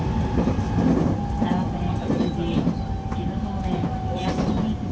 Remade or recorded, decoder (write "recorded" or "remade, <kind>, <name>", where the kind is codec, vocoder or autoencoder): recorded